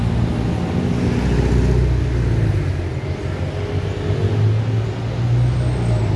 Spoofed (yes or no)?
no